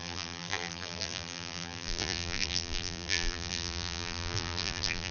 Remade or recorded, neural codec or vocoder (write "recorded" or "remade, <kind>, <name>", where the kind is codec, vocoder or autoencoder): remade, vocoder, BigVGAN v2